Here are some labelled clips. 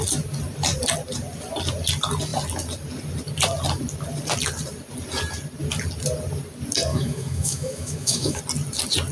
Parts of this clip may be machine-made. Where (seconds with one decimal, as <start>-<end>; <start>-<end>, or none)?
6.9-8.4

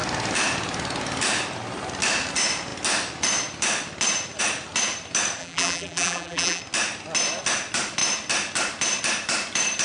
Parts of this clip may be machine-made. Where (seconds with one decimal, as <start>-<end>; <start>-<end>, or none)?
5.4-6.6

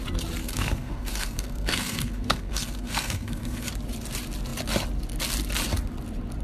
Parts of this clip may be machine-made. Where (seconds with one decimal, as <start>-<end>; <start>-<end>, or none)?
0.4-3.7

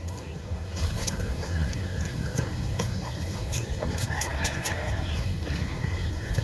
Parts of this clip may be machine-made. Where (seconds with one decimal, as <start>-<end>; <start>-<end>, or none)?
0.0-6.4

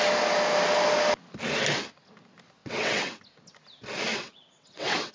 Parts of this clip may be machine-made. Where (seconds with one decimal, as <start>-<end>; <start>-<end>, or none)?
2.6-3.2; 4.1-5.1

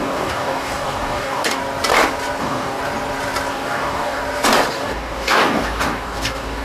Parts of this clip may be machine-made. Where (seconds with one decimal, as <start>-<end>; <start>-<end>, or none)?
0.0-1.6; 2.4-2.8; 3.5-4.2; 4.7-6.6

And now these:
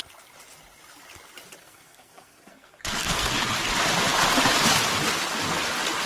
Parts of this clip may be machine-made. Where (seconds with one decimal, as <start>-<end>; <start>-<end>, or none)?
1.6-3.3